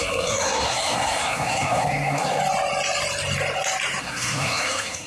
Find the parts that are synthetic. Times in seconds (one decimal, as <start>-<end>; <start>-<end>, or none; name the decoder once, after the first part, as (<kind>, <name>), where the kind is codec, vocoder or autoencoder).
0.0-2.4 (codec, SNAC); 4.0-5.1